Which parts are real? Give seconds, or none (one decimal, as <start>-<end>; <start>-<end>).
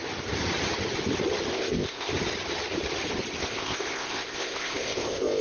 0.0-1.5; 2.1-3.4